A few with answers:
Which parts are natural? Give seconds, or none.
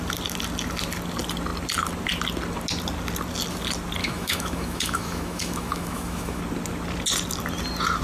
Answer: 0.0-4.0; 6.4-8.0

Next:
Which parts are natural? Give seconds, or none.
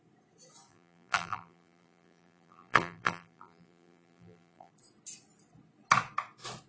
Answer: 0.0-0.7; 4.7-6.7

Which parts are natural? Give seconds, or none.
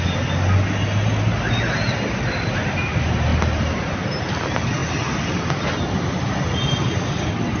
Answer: 0.0-7.6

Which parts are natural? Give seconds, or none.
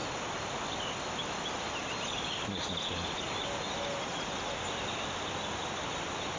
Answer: 0.0-6.4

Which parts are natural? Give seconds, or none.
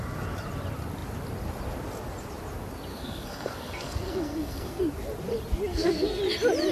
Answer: 0.0-2.9; 4.8-5.7; 6.2-6.7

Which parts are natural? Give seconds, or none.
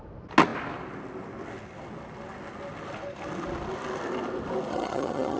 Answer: 0.0-4.7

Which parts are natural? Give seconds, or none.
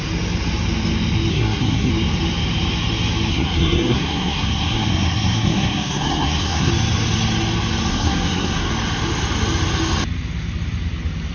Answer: 0.0-1.3; 1.9-3.3; 6.7-7.9; 8.7-11.3